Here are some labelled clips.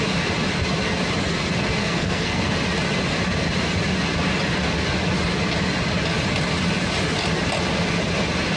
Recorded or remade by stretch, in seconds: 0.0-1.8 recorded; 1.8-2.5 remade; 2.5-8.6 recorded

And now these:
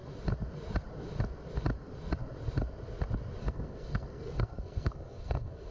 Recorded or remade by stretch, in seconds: 0.0-3.4 recorded; 3.4-5.7 remade